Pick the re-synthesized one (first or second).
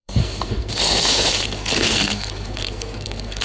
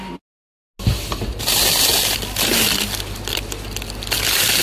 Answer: first